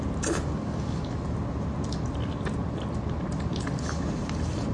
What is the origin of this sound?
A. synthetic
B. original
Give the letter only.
B